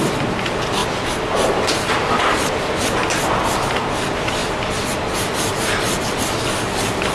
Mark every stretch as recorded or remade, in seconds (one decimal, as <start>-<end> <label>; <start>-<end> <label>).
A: 0.0-0.8 remade; 0.8-3.3 recorded; 3.3-7.1 remade